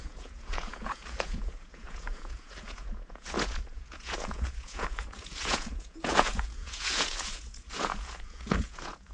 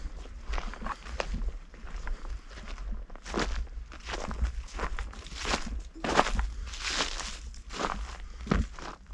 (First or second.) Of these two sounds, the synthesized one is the first